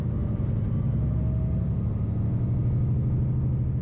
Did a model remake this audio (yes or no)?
no